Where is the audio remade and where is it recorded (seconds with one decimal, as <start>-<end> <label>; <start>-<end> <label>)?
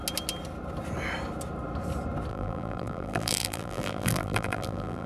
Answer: 0.0-2.3 recorded; 2.3-5.1 remade